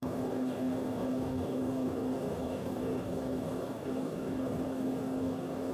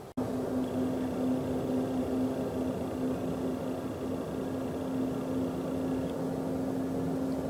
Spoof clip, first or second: first